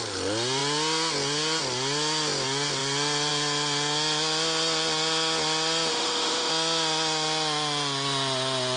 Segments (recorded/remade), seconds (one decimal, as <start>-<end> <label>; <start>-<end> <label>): 0.0-5.9 recorded; 5.9-6.5 remade; 6.5-8.8 recorded

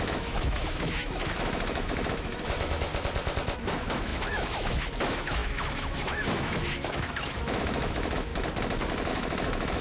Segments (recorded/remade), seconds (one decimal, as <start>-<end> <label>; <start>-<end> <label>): 0.0-2.9 remade; 2.9-3.6 recorded; 3.6-8.3 remade; 8.3-9.1 recorded; 9.1-9.8 remade

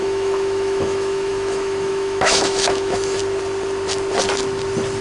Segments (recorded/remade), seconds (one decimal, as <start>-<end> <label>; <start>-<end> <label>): 0.0-3.2 remade; 3.2-5.0 recorded

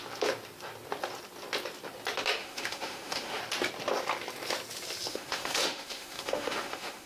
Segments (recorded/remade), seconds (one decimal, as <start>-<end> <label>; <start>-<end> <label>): 0.0-2.4 recorded; 2.4-3.4 remade; 3.4-5.1 recorded; 5.1-7.1 remade

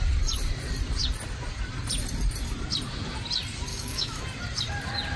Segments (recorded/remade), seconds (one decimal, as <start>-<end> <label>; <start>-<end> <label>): 0.0-3.7 recorded; 3.7-4.2 remade; 4.2-5.2 recorded

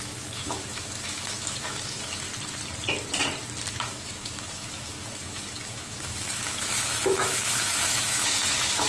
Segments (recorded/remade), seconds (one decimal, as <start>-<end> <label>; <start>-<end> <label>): 0.0-2.3 remade; 2.3-3.7 recorded; 3.7-8.9 remade

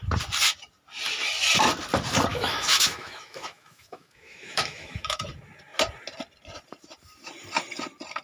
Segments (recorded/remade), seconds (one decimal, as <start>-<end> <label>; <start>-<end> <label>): 0.0-2.3 recorded; 2.3-5.2 remade; 5.2-8.2 recorded